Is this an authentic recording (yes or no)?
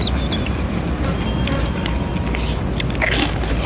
yes